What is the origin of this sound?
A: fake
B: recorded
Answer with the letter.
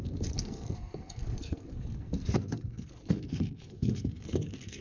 A